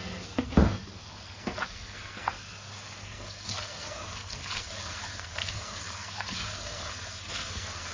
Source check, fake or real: fake